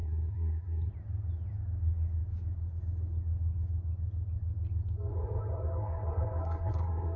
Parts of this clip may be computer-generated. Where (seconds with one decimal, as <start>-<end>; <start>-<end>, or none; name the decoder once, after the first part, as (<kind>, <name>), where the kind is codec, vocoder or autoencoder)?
0.0-0.9 (codec, SNAC); 5.1-7.2